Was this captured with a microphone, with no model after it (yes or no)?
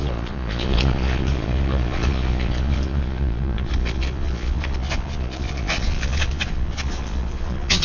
no